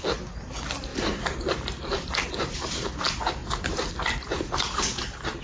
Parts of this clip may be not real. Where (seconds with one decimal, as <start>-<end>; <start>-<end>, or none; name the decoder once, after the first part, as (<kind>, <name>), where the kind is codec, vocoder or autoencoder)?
0.9-2.9 (vocoder, BigVGAN v2); 3.4-4.8